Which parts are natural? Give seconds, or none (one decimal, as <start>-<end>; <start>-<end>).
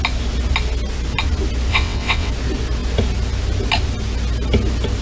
0.0-1.7; 2.3-5.0